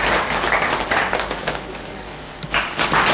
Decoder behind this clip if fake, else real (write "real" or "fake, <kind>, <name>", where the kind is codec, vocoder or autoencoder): fake, codec, DAC